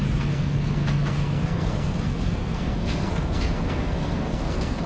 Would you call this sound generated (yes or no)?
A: yes